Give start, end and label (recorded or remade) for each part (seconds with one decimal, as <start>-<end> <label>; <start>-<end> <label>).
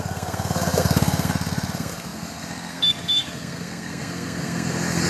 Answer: 0.0-5.1 remade